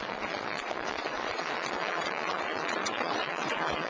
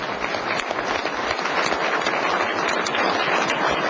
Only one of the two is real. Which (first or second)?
second